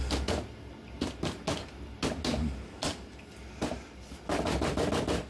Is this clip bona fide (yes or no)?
yes